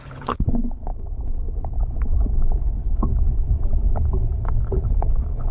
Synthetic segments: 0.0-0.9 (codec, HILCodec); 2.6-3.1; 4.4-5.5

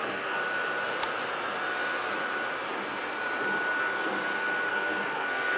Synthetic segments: 0.0-0.4 (codec, SNAC); 3.8-4.2; 4.7-5.6

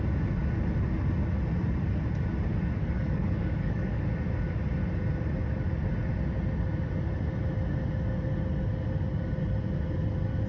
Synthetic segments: 2.8-4.0 (codec, DAC)

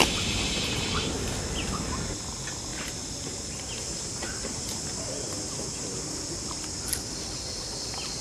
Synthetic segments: none

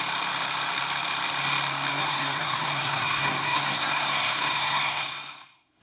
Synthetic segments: 1.9-5.8 (codec, SNAC)

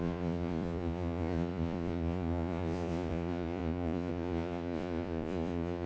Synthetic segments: 0.0-5.9 (vocoder, Vocos)